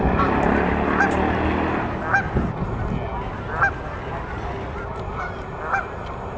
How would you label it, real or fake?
real